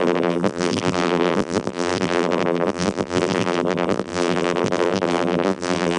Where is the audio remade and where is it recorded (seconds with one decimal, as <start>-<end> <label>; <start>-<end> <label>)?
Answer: 0.0-6.0 remade